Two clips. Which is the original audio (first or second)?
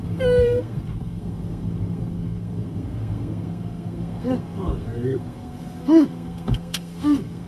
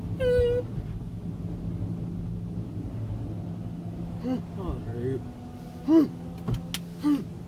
second